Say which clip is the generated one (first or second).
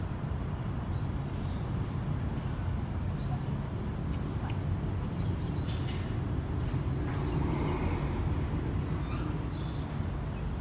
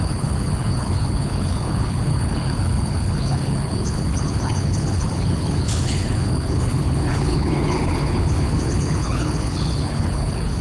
second